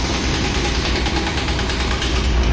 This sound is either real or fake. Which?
real